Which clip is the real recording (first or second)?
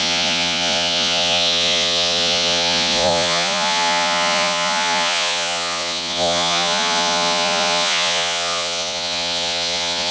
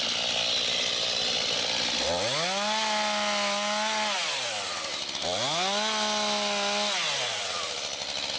second